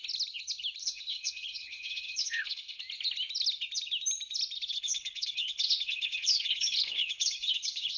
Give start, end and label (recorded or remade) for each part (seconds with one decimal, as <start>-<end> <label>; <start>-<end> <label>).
0.0-0.8 recorded; 0.8-2.8 remade; 2.8-4.7 recorded; 4.7-8.0 remade